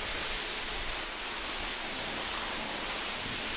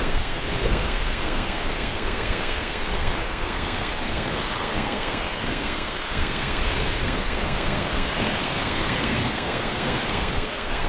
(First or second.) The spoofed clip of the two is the second